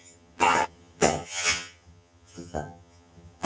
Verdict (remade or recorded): remade